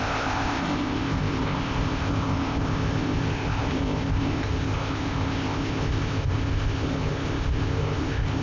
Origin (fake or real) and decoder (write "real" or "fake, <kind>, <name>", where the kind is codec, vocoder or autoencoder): fake, codec, ZipCodec